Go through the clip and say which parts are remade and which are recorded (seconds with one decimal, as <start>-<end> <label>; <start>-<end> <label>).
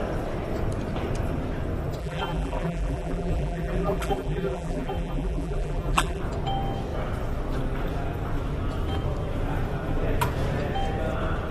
0.0-2.0 recorded; 2.0-6.2 remade; 6.2-11.5 recorded